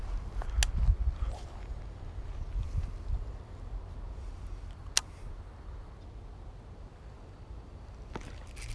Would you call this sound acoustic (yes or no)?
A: yes